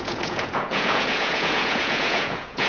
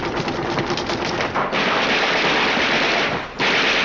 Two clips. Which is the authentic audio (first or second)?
second